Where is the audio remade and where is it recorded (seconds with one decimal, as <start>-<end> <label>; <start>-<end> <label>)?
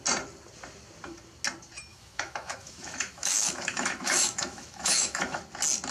0.0-1.9 recorded; 1.9-5.4 remade; 5.4-5.9 recorded